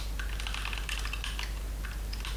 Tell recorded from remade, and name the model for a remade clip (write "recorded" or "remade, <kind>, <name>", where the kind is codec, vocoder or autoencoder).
recorded